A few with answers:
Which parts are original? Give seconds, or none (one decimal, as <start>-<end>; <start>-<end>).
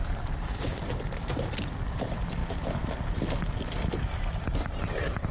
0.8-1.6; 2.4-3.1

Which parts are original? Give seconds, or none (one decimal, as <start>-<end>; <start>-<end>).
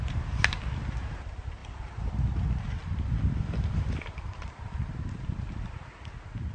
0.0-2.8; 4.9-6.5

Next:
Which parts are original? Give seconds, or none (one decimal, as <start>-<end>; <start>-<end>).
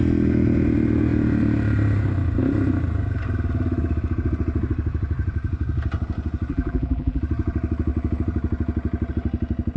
0.0-6.5; 7.2-9.8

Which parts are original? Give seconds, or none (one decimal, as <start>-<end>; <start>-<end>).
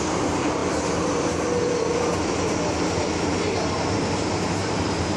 0.6-3.7